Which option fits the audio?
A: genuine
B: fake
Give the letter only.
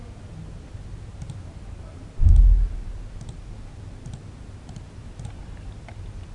A